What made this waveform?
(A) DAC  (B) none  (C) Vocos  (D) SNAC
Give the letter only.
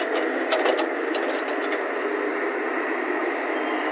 B